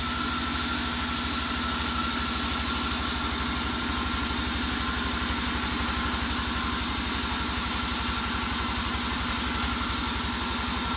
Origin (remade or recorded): recorded